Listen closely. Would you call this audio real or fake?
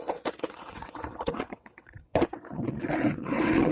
fake